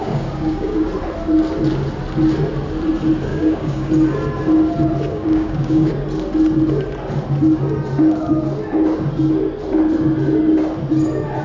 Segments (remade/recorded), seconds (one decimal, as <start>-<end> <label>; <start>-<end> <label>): 0.0-0.9 remade; 0.9-3.3 recorded; 3.3-3.9 remade; 3.9-5.1 recorded; 5.1-5.9 remade; 5.9-11.4 recorded